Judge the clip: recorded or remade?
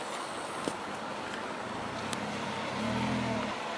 recorded